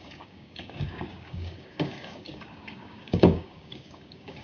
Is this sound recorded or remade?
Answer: remade